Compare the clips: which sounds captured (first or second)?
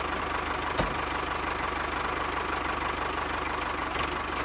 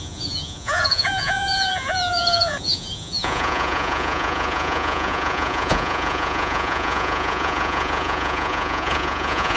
first